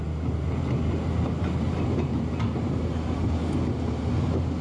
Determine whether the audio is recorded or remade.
recorded